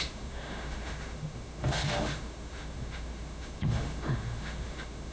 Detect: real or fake fake